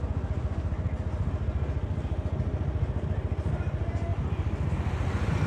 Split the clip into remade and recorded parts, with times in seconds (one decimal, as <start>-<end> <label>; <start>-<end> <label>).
0.0-5.5 recorded